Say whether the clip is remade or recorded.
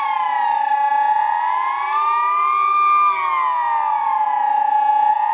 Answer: recorded